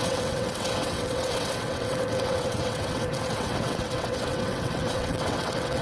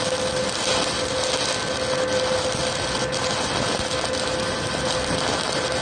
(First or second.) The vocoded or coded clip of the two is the first